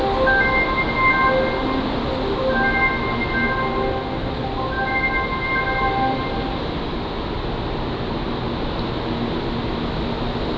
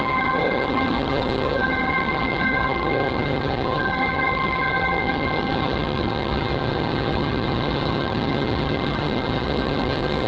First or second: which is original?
first